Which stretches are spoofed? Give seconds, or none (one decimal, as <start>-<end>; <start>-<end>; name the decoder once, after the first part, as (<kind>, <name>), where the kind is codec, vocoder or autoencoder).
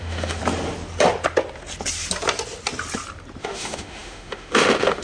0.0-0.4 (autoencoder, DAC-VAE); 3.4-5.0